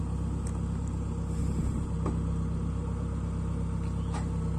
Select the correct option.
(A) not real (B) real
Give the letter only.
B